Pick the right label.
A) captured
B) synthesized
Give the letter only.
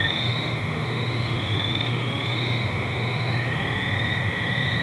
B